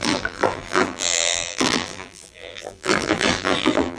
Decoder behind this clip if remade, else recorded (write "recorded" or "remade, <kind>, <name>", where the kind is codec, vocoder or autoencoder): remade, vocoder, BigVGAN v2